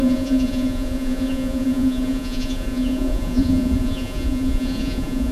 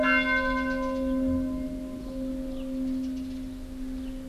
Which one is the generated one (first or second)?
first